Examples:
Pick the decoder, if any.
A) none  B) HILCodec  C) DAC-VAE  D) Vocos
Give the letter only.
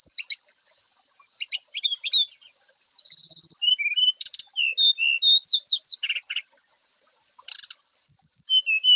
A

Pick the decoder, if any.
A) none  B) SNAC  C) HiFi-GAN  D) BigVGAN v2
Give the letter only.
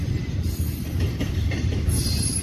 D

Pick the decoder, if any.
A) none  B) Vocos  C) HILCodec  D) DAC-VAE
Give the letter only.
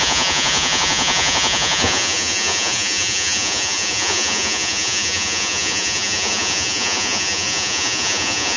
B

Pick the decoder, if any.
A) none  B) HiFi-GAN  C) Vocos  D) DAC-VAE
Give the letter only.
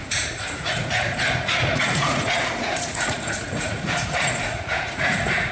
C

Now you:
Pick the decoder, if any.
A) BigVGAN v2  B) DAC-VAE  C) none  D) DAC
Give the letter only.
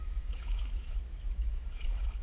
B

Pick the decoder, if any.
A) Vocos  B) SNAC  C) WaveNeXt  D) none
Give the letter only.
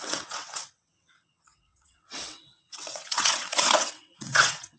C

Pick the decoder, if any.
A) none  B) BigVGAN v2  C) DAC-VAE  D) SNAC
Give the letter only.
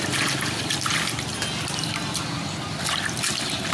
A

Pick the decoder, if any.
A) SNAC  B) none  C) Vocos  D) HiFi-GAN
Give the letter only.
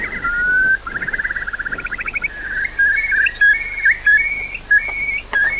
B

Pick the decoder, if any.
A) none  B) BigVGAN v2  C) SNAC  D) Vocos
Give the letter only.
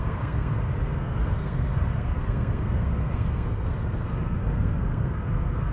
C